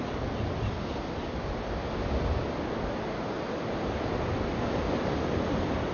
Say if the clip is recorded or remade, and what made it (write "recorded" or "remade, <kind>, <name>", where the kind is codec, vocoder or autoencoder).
recorded